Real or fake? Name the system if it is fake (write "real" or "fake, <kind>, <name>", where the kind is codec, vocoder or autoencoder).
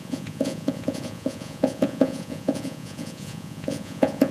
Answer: fake, vocoder, Vocos